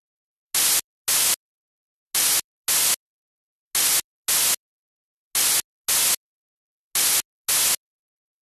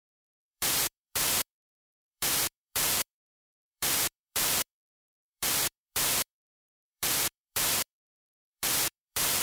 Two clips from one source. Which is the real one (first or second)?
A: first